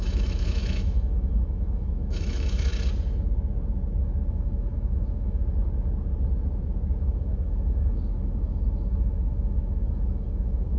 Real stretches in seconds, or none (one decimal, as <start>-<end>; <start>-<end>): 2.7-4.3; 5.4-7.0